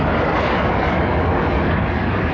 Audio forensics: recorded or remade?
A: remade